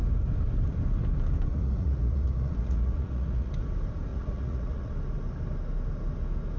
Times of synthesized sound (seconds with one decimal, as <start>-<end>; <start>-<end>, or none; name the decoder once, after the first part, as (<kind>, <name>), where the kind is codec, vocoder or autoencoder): 1.5-3.5 (vocoder, Vocos); 4.1-4.9